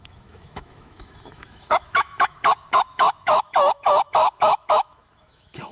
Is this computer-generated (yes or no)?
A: yes